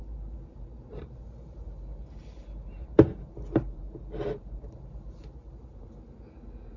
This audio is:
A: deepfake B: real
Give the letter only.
A